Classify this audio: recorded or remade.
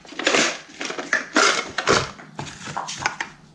recorded